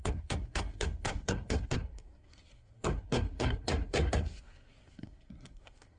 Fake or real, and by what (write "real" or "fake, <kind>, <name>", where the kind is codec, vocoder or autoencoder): fake, codec, SNAC